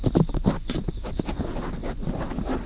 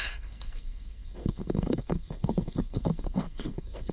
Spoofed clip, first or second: second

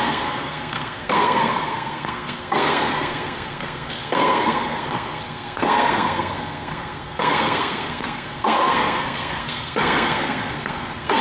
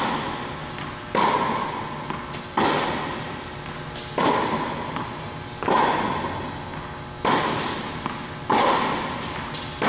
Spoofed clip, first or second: first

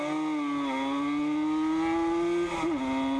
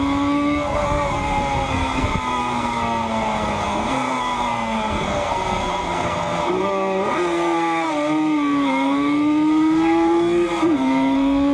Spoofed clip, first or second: second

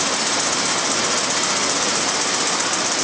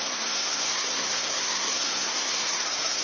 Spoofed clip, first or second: second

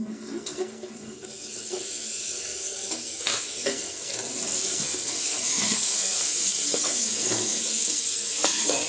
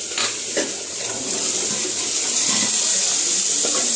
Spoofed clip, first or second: first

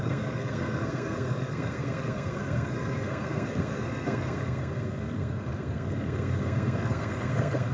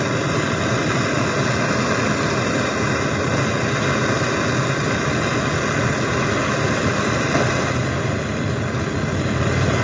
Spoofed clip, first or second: first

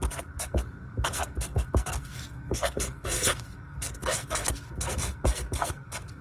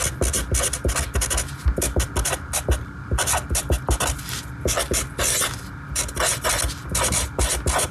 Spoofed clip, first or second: first